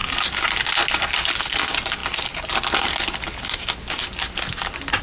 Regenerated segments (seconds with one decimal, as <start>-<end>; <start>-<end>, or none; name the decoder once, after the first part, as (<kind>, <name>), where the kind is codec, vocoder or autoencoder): none